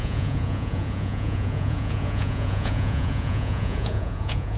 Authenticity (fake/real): fake